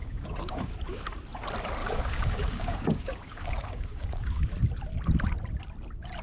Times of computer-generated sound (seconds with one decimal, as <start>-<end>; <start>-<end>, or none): 0.0-0.7; 1.8-4.5